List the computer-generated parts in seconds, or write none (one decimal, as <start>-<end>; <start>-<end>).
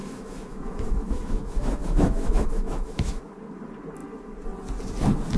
0.0-3.2